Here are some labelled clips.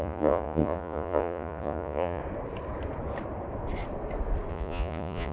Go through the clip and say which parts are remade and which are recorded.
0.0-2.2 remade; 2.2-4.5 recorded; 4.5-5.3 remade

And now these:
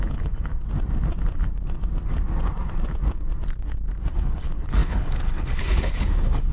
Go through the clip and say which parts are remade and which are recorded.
0.0-0.5 remade; 0.5-4.1 recorded; 4.1-6.5 remade